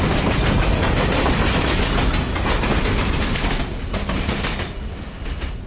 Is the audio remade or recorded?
recorded